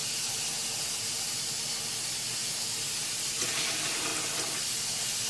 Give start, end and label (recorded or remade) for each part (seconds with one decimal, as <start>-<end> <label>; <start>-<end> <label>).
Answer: 0.0-5.3 recorded

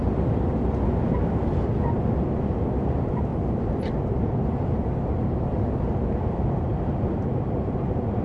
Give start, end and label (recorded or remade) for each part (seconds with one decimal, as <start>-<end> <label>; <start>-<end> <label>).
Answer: 0.0-3.3 recorded; 3.3-5.7 remade; 5.7-6.7 recorded; 6.7-8.2 remade

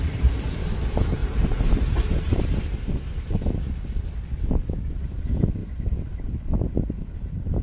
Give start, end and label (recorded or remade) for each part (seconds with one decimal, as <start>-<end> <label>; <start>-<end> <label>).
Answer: 0.0-1.2 recorded; 1.2-3.4 remade; 3.4-7.6 recorded

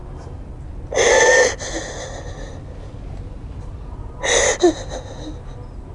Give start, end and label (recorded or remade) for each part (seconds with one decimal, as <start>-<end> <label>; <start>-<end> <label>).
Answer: 0.0-5.9 recorded

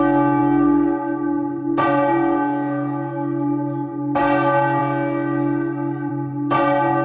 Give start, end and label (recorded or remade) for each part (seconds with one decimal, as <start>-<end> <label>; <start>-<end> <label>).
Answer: 0.0-7.0 recorded